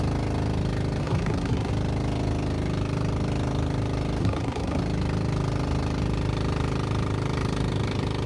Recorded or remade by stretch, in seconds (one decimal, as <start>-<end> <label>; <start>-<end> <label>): 0.0-1.0 recorded; 1.0-1.7 remade; 1.7-4.2 recorded; 4.2-4.8 remade; 4.8-8.3 recorded